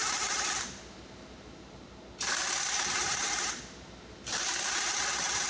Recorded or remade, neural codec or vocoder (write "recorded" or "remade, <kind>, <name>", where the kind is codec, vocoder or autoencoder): recorded